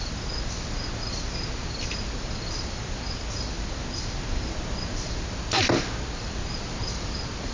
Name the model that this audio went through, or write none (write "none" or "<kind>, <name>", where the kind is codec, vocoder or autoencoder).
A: none